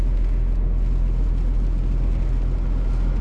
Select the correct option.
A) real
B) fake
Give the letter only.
A